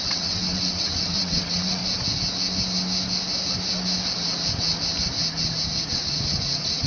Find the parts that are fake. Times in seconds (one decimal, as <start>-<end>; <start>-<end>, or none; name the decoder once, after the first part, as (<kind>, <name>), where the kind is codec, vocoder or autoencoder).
0.0-1.8 (vocoder, WaveNeXt); 5.9-6.9